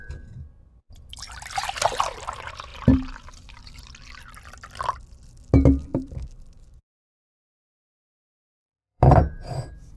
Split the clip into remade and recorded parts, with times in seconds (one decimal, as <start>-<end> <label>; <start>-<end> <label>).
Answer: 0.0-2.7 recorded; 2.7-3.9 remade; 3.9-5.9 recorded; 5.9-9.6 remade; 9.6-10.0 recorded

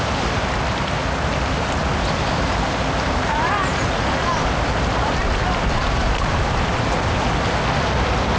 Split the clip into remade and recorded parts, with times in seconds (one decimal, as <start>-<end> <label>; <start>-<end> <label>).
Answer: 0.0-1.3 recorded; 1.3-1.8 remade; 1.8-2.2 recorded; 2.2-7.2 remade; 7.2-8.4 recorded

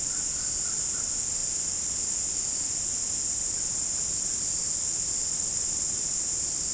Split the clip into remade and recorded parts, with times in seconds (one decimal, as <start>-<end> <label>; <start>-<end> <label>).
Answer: 0.0-5.5 recorded; 5.5-6.2 remade; 6.2-6.7 recorded

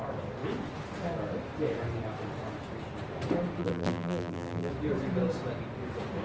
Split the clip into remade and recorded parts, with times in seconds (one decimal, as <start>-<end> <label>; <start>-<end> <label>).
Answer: 0.0-3.6 recorded; 3.6-4.7 remade; 4.7-6.2 recorded

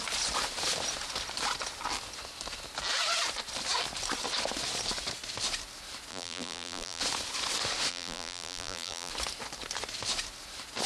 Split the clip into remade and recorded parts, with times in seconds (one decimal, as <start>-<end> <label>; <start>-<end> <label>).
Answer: 0.0-6.1 recorded; 6.1-7.0 remade; 7.0-7.9 recorded; 7.9-9.1 remade; 9.1-10.9 recorded

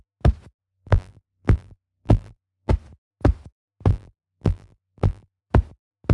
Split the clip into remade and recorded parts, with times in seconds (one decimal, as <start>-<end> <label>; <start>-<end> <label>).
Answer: 0.0-0.6 recorded; 0.6-2.7 remade; 2.7-3.9 recorded; 3.9-5.4 remade; 5.4-6.1 recorded

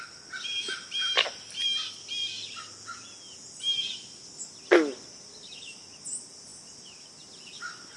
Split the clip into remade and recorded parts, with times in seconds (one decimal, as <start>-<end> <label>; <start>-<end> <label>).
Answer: 0.0-8.0 recorded